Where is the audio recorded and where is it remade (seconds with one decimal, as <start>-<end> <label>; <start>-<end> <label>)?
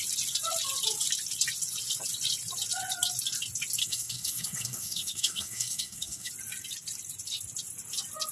0.0-3.8 recorded; 3.8-6.3 remade; 6.3-8.3 recorded